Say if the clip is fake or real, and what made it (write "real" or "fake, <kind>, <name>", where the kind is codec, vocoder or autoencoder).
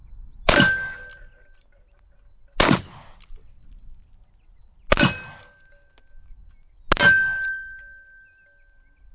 real